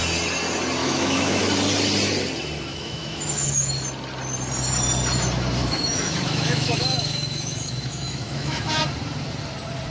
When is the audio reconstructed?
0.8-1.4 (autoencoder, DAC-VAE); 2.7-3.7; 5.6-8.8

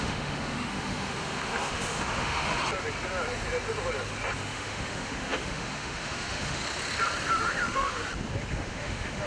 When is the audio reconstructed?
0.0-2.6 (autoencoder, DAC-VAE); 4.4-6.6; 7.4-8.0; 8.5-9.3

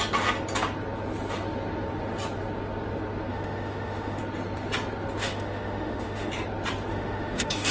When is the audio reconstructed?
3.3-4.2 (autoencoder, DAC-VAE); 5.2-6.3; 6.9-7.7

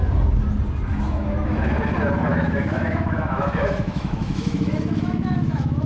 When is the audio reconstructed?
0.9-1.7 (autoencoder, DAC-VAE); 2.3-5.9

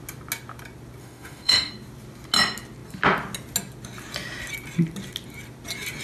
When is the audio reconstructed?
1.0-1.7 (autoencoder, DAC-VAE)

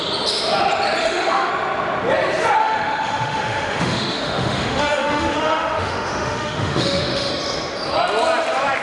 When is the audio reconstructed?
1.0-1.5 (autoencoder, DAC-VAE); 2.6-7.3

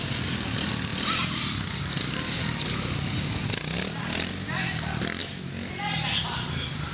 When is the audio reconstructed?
5.2-5.7 (autoencoder, DAC-VAE)